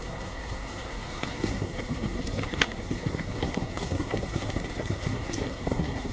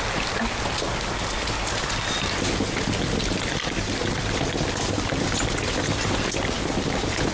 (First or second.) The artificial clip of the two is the first